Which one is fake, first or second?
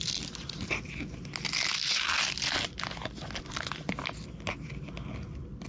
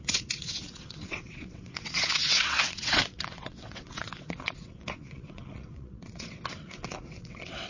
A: second